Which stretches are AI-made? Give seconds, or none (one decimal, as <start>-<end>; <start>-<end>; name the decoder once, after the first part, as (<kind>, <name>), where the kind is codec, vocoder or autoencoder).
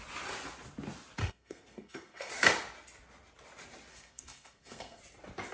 1.2-2.3 (codec, SNAC); 3.9-5.0